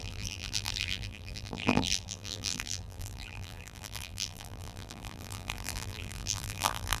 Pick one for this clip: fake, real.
fake